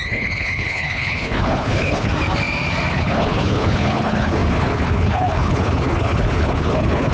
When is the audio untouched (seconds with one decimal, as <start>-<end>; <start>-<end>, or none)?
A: 2.1-2.9